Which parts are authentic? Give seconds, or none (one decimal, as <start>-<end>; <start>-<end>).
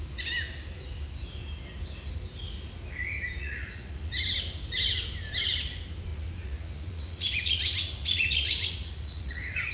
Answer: 0.0-3.4; 4.1-6.1